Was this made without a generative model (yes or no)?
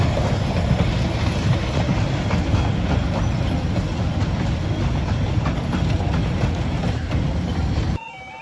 yes